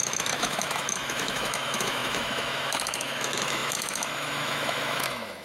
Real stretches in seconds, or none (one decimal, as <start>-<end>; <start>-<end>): none